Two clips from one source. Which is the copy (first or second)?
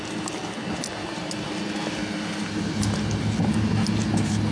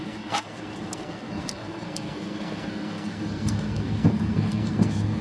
second